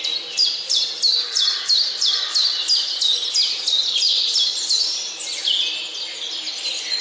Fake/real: real